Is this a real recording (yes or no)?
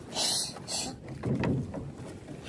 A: yes